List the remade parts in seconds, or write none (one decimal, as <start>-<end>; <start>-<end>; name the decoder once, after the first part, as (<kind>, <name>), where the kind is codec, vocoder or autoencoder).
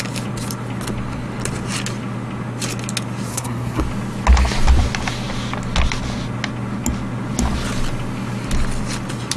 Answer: 3.3-3.8 (codec, SNAC)